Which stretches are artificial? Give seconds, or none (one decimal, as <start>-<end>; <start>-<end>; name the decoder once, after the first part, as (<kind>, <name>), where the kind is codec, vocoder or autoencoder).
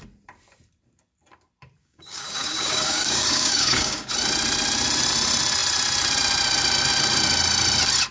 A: 1.8-4.1 (codec, DAC)